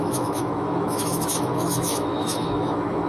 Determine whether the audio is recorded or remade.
remade